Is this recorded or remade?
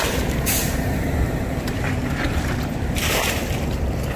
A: remade